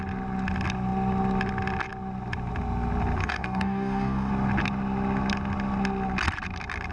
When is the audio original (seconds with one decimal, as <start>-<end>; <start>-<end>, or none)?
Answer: 0.0-3.2; 4.3-6.9